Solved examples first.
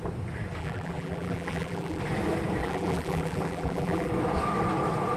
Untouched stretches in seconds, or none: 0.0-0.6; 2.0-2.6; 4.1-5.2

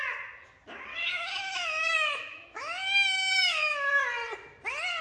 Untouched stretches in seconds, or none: 0.0-0.9; 3.9-5.0

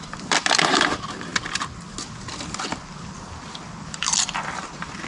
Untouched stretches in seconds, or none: 1.3-2.4

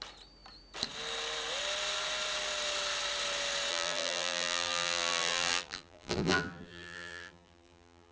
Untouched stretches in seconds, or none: 0.0-3.7

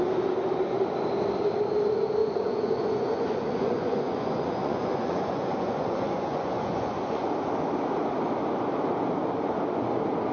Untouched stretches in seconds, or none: 0.0-2.2; 7.3-10.3